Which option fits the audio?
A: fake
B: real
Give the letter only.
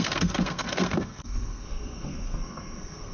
A